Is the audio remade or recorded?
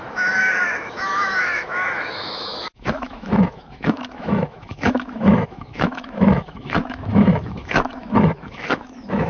remade